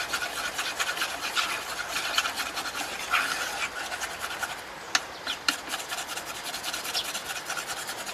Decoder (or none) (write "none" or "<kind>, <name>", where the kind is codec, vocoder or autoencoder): none